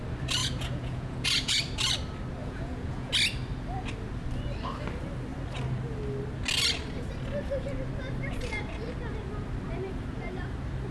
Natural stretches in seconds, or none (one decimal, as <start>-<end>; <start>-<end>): 0.0-0.4; 1.6-2.4; 3.1-10.9